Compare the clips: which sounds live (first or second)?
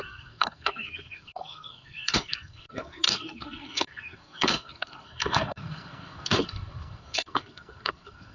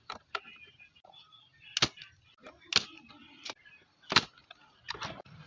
second